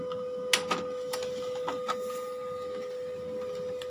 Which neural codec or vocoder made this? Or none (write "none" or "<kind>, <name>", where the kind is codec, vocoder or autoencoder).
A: none